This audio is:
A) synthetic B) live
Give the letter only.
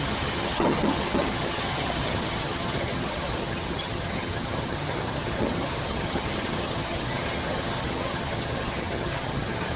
A